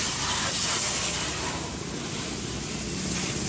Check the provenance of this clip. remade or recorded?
recorded